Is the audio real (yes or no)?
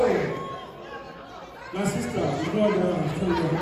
yes